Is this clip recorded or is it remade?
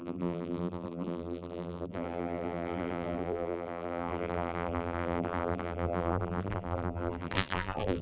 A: remade